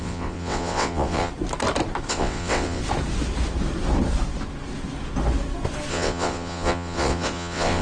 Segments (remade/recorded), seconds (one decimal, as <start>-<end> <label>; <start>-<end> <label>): 0.0-1.3 remade; 1.3-2.1 recorded; 2.1-2.8 remade; 2.8-5.9 recorded; 5.9-7.8 remade